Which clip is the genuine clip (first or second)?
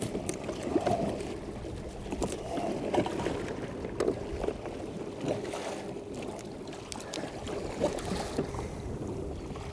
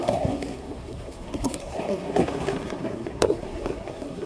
first